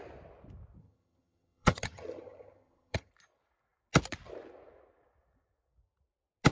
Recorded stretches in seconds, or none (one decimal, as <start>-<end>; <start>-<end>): 0.0-0.8; 3.1-6.5